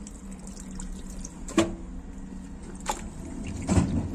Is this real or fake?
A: real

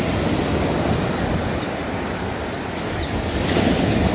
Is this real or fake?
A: real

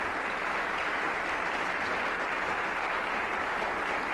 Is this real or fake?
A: real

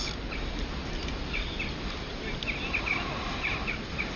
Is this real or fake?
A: real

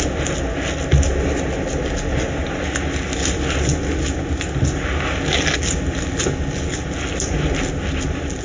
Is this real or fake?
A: real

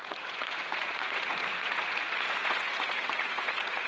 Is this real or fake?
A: fake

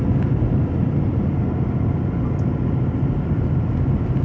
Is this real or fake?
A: real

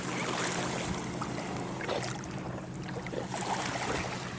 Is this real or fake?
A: real